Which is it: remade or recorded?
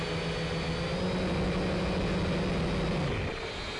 recorded